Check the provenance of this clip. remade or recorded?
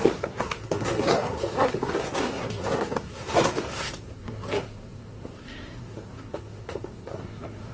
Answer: remade